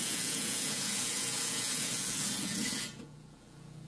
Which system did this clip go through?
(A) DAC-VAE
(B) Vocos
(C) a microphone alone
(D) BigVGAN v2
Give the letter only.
B